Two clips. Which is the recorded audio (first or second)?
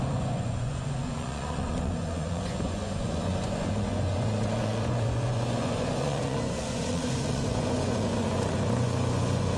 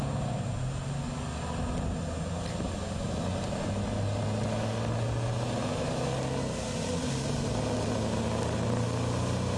second